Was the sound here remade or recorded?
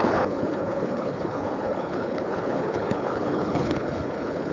remade